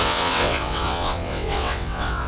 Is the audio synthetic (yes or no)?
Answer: yes